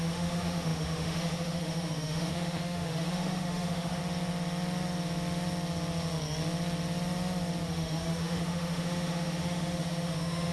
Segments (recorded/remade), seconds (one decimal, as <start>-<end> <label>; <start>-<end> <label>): 0.0-4.0 remade; 4.0-7.7 recorded; 7.7-10.5 remade